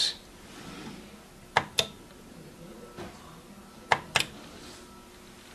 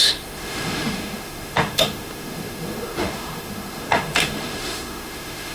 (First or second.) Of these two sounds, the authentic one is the first